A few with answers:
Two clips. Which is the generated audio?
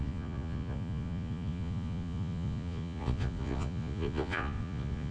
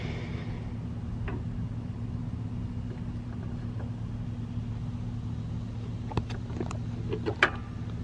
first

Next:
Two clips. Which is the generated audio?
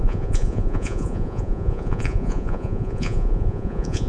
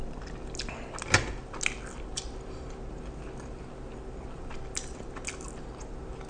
first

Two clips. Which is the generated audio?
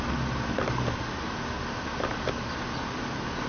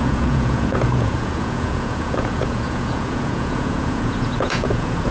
second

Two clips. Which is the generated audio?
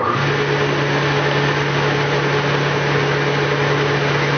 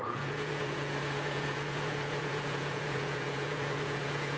second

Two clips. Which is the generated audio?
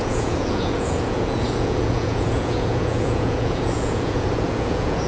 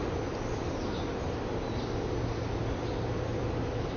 first